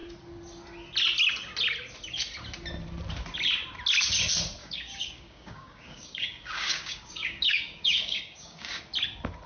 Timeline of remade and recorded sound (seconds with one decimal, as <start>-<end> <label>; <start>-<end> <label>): 0.0-4.6 recorded; 4.6-8.8 remade; 8.8-9.5 recorded